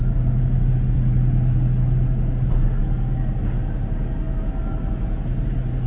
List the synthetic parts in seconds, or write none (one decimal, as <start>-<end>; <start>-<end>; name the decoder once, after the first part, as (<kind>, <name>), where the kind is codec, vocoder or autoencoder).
none